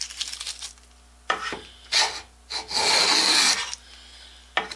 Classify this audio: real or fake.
real